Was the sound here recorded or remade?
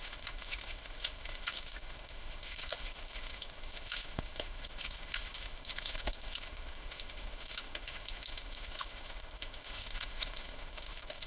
remade